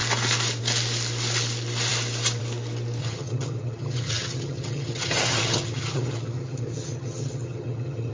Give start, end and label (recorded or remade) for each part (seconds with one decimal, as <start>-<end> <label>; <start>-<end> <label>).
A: 0.0-3.0 recorded; 3.0-8.1 remade